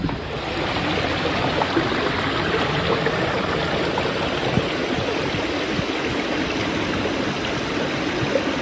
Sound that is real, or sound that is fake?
real